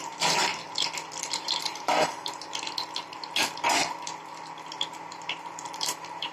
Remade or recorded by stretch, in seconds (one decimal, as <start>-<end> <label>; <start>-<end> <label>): 0.0-0.5 remade; 0.5-1.2 recorded; 1.2-1.9 remade; 1.9-4.9 recorded; 4.9-6.3 remade